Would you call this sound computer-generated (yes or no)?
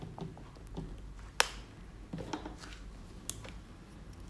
no